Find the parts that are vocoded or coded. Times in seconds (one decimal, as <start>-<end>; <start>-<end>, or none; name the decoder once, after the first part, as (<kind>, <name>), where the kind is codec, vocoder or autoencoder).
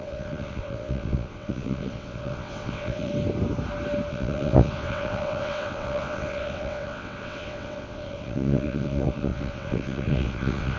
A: 0.0-3.1 (vocoder, WaveNeXt); 4.1-10.8